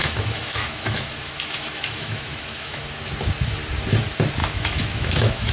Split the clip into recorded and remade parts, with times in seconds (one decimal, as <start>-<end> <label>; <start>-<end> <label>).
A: 0.0-2.8 remade; 2.8-4.4 recorded; 4.4-5.5 remade